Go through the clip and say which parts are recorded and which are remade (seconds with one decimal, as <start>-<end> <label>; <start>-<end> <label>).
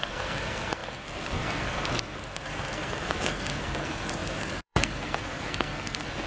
0.0-6.3 remade